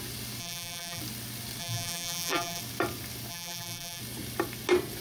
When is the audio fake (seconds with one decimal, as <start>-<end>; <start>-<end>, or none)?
0.4-1.0; 1.6-2.6; 3.3-4.0